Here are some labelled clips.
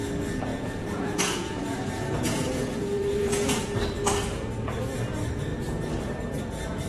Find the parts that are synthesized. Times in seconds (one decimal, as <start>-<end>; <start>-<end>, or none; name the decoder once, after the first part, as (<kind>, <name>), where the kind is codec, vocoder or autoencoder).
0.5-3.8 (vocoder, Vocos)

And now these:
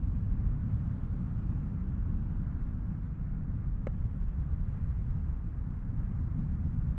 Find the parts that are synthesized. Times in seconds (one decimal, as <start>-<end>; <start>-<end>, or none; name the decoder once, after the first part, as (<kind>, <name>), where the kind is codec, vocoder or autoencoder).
0.0-7.0 (vocoder, BigVGAN v2)

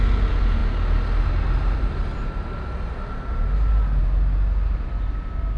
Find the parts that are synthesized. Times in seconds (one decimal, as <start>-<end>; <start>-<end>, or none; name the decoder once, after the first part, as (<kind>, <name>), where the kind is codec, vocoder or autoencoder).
none